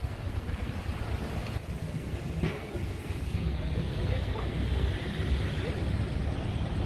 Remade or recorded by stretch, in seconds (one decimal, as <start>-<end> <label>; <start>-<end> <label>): 0.0-0.7 remade; 0.7-1.8 recorded; 1.8-4.9 remade; 4.9-6.9 recorded